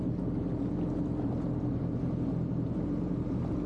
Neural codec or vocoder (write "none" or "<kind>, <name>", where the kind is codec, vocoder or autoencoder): none